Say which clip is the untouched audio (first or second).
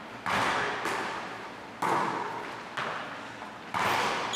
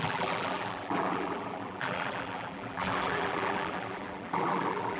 first